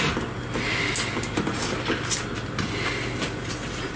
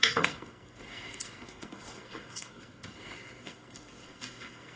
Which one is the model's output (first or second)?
second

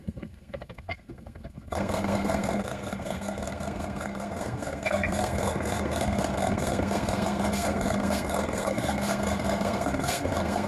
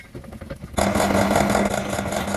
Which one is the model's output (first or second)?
first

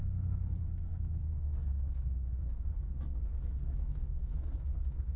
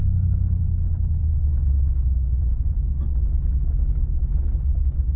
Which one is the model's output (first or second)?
first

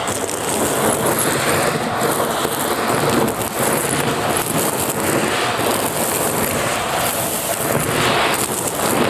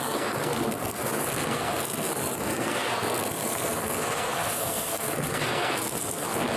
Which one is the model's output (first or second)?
second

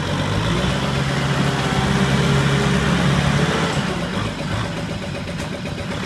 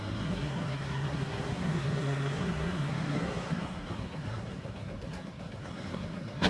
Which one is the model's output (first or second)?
second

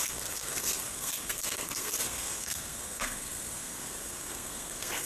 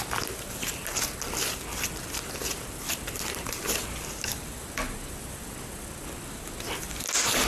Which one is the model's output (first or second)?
first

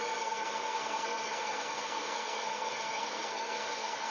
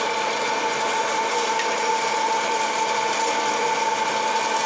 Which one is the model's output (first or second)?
first